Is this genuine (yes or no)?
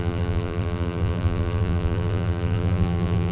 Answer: no